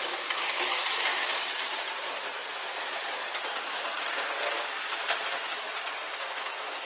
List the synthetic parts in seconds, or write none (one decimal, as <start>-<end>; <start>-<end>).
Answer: 0.0-1.1; 1.7-6.9